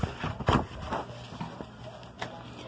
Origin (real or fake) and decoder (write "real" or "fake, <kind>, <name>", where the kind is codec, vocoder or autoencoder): real